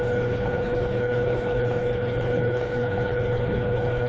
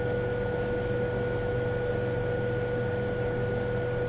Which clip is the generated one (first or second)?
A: first